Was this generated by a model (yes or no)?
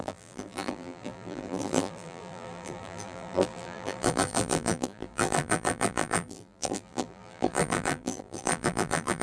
yes